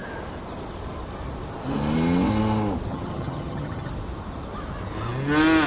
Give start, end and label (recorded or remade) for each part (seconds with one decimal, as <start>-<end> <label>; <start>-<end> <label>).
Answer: 0.0-2.9 recorded; 2.9-3.9 remade; 3.9-5.7 recorded